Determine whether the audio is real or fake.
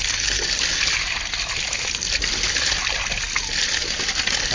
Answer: real